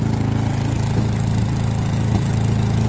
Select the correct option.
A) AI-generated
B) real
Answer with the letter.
B